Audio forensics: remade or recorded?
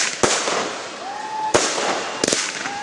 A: recorded